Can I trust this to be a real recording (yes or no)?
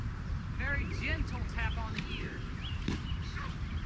no